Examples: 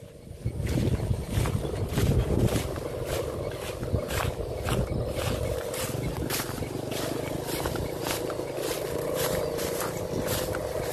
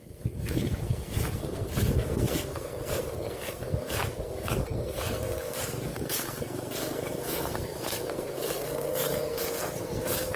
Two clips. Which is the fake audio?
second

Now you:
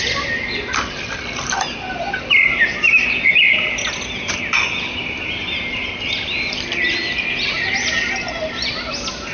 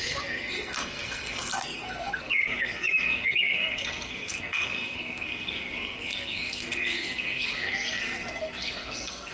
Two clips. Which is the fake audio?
second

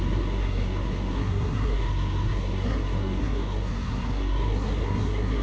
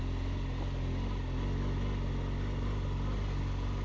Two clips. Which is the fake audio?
first